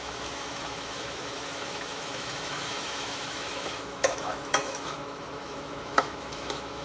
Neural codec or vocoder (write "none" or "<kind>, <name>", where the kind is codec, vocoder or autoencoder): autoencoder, DAC-VAE